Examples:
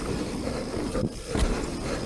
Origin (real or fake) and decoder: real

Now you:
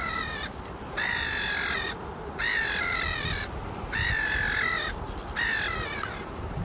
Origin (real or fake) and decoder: real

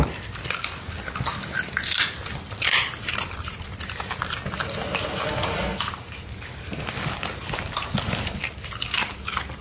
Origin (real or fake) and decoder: real